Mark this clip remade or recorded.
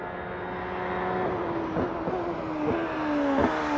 recorded